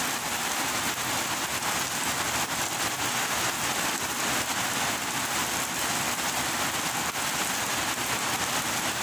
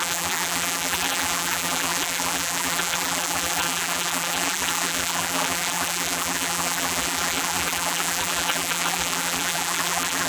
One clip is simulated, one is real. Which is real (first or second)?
first